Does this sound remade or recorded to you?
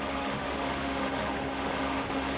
remade